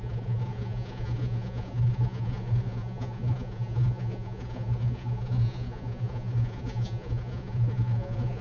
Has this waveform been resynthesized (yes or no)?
yes